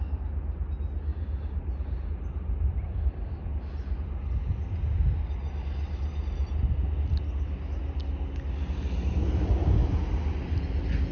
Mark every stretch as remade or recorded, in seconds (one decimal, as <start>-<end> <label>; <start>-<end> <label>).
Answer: 0.0-1.1 recorded; 1.1-2.1 remade; 2.1-11.1 recorded